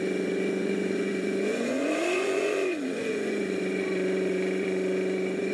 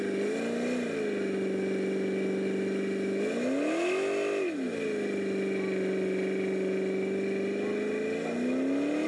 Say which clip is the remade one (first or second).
first